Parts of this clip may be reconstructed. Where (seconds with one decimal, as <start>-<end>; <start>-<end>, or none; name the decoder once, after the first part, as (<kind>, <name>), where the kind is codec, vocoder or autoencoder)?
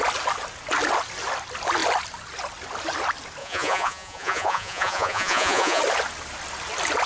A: 3.4-5.8 (vocoder, Vocos)